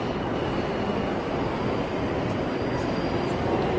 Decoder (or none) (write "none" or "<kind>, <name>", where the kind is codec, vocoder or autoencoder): none